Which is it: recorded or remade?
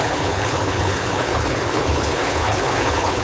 remade